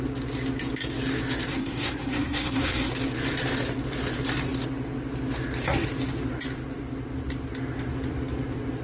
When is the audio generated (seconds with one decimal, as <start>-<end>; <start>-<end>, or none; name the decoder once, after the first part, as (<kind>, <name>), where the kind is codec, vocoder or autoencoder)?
1.5-2.9 (codec, SNAC)